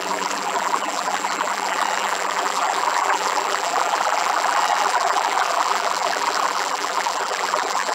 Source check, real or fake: fake